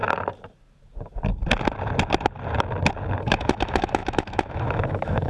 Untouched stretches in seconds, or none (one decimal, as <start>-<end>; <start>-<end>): 0.0-3.2